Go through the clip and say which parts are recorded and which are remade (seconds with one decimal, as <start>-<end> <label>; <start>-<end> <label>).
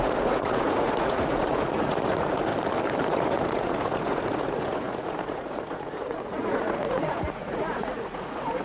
0.0-2.5 remade; 2.5-3.0 recorded; 3.0-8.6 remade